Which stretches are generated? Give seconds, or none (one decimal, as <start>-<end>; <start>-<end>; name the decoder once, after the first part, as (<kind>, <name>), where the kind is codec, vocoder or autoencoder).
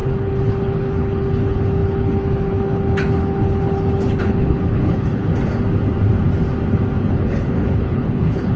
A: 0.0-5.3 (codec, HILCodec); 7.0-8.6